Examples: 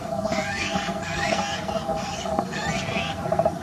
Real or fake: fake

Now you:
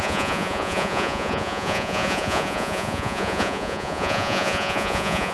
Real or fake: fake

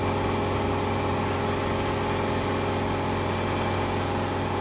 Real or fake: real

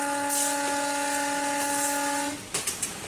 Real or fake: real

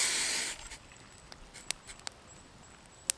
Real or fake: real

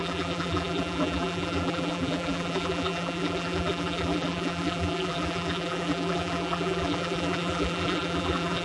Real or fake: fake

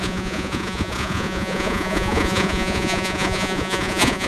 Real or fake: fake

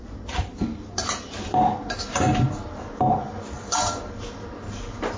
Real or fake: real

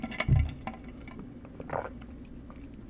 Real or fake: fake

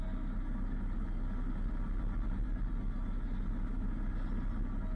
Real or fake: real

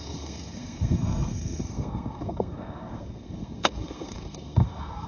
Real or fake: fake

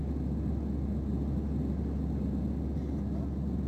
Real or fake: real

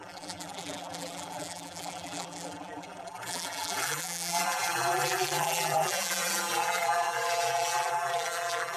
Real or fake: fake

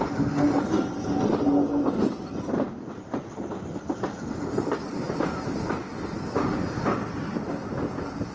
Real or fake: real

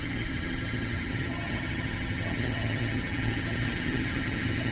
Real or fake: fake